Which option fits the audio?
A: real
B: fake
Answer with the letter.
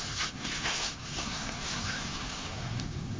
B